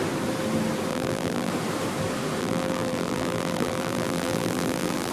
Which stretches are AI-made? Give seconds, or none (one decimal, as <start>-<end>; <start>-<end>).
0.9-1.5; 2.4-5.1